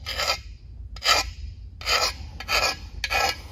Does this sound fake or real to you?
real